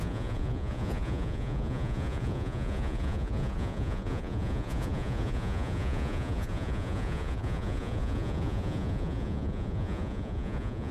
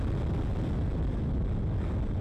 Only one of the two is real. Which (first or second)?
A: second